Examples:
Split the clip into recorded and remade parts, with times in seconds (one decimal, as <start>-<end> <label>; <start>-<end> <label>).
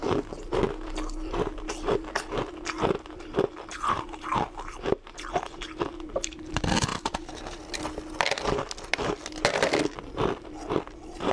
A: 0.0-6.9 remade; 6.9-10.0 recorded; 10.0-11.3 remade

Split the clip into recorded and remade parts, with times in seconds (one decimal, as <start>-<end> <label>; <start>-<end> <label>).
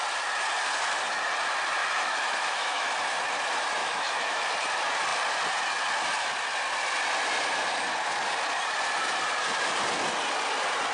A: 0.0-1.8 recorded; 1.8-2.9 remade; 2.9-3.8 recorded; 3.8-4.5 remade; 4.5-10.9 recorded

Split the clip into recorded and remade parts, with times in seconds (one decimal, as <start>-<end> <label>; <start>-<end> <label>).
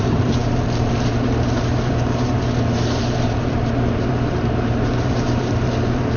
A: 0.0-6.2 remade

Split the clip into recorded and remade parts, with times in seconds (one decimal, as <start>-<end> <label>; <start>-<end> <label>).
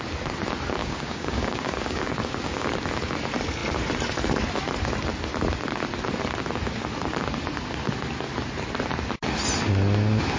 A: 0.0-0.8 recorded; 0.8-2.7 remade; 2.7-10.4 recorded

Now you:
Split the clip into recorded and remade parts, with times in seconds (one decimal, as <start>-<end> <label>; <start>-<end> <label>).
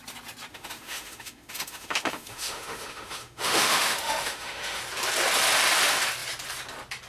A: 0.0-0.5 recorded; 0.5-4.8 remade; 4.8-7.1 recorded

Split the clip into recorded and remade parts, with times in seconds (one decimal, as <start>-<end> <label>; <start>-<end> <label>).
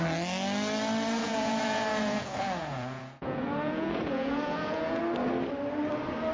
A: 0.0-1.2 recorded; 1.2-5.0 remade; 5.0-6.3 recorded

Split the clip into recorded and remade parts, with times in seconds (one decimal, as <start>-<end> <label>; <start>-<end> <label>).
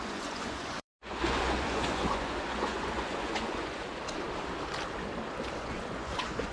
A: 0.0-4.0 remade; 4.0-5.6 recorded; 5.6-6.5 remade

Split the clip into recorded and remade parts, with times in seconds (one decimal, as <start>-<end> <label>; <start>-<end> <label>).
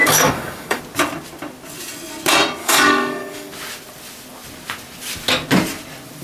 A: 0.0-0.8 remade; 0.8-2.6 recorded; 2.6-3.5 remade; 3.5-6.2 recorded